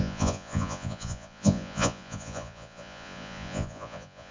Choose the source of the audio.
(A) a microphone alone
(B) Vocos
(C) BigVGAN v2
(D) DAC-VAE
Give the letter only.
B